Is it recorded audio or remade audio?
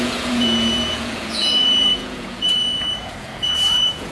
remade